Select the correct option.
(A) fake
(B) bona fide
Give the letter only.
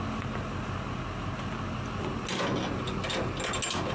B